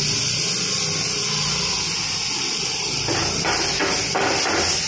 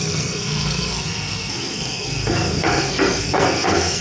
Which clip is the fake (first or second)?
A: second